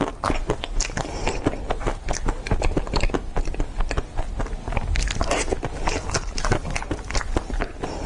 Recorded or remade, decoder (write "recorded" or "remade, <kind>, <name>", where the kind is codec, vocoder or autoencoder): recorded